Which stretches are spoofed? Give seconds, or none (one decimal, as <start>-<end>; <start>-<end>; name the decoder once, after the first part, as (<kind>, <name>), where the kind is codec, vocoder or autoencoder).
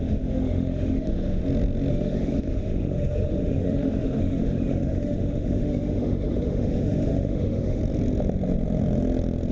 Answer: 0.0-1.4 (autoencoder, DAC-VAE); 1.9-7.8